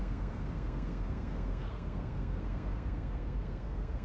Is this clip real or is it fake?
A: fake